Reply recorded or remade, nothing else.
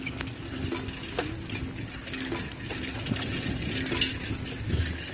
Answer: recorded